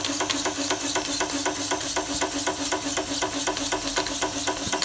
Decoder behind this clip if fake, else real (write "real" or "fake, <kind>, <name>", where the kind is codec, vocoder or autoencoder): real